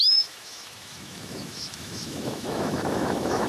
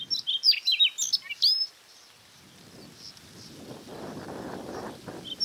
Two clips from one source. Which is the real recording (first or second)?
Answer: second